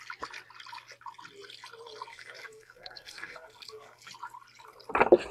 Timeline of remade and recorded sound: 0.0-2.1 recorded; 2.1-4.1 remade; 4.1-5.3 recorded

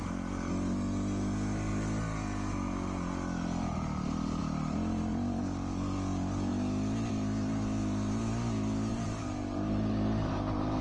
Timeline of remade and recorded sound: 0.0-8.9 recorded; 8.9-10.8 remade

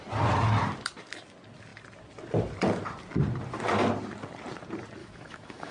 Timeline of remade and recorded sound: 0.0-5.0 recorded; 5.0-5.7 remade

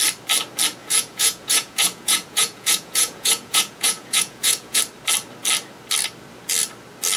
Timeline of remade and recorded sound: 0.0-0.8 recorded; 0.8-4.8 remade; 4.8-7.2 recorded

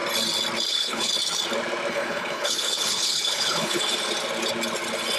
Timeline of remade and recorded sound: 0.0-0.7 recorded; 0.7-1.1 remade; 1.1-1.9 recorded; 1.9-3.8 remade; 3.8-5.2 recorded

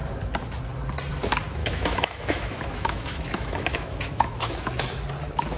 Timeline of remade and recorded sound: 0.0-1.6 recorded; 1.6-5.0 remade; 5.0-5.6 recorded

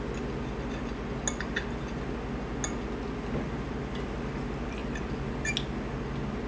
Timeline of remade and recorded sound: 0.0-6.5 recorded